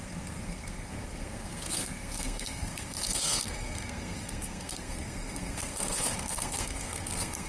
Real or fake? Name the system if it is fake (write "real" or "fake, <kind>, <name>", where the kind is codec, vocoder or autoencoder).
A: fake, codec, SNAC